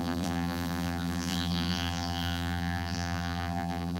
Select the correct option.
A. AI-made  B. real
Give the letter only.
A